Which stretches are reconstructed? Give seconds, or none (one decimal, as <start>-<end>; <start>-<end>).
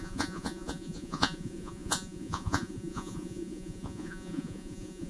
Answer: 0.0-5.1